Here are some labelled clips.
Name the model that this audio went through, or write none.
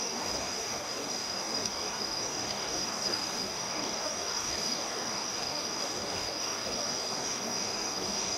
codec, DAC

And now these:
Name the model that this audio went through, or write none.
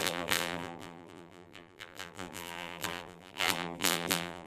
vocoder, BigVGAN v2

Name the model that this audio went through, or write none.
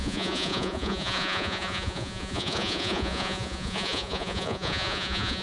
vocoder, Vocos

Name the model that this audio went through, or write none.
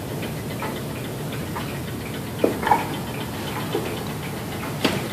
none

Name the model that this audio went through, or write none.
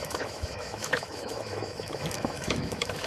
autoencoder, DAC-VAE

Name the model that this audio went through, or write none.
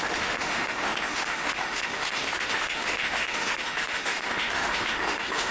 autoencoder, DAC-VAE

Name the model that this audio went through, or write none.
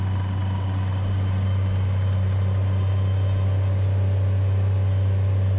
none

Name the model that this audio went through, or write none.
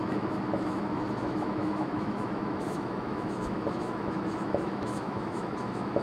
autoencoder, DAC-VAE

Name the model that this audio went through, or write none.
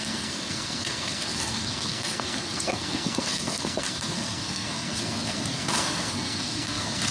codec, SNAC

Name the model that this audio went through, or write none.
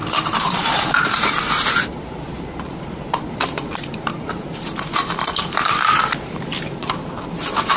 vocoder, BigVGAN v2